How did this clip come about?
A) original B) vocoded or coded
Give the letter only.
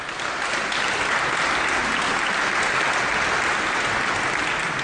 A